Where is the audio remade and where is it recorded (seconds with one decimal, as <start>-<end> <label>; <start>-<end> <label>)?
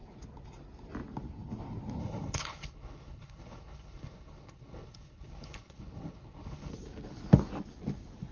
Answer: 0.0-2.0 recorded; 2.0-6.7 remade; 6.7-8.3 recorded